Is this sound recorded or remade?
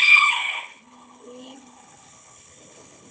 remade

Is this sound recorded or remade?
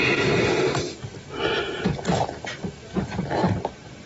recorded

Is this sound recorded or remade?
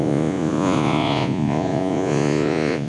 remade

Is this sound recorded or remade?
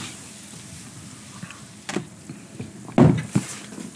recorded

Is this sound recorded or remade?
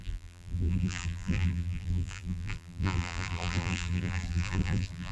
remade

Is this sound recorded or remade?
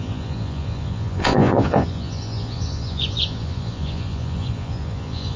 remade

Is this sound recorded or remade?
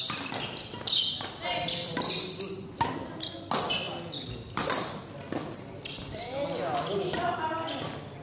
recorded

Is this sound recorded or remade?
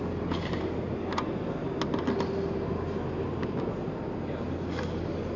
recorded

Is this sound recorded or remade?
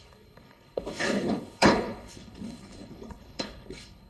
remade